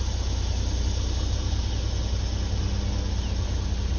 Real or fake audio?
real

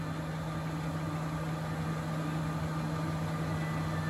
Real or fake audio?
real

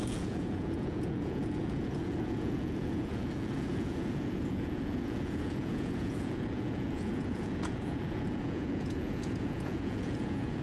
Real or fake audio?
fake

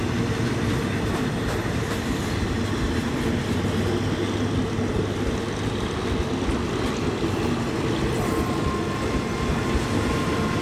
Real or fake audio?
real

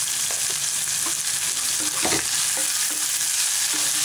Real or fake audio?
real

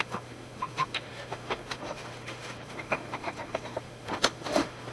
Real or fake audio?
fake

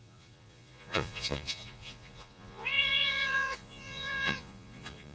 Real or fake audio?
fake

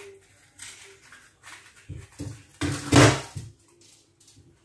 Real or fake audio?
real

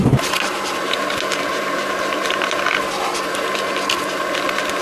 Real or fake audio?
real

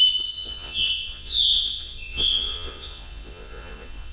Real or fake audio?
fake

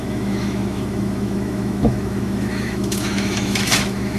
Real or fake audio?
fake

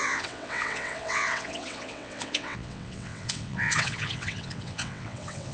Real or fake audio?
fake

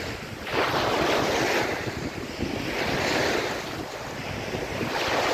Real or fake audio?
real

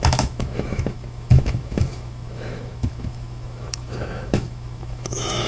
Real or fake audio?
fake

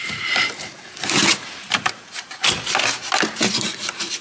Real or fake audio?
real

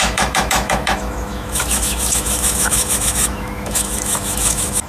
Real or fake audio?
fake